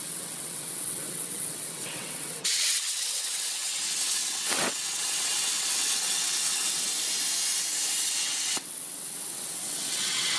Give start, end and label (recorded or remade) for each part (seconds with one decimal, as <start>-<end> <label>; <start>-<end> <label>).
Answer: 0.0-6.9 remade; 6.9-8.1 recorded; 8.1-10.4 remade